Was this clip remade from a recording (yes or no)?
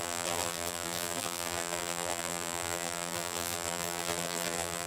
yes